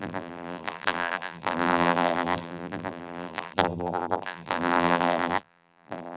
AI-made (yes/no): yes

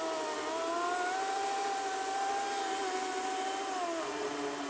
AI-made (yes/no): no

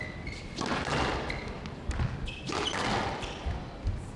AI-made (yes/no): no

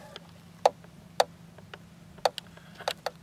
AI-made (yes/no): no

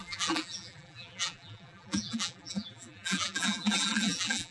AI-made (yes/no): yes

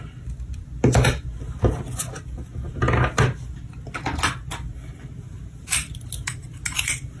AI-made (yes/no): no